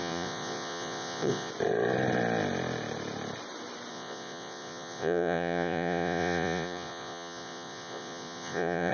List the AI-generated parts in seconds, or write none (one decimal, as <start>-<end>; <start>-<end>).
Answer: 0.0-1.5; 3.9-8.9